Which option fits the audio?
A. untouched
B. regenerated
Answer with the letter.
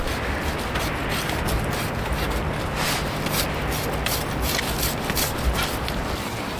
A